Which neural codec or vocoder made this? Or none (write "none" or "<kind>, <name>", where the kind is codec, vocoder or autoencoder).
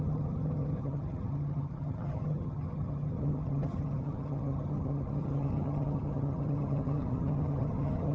vocoder, HiFi-GAN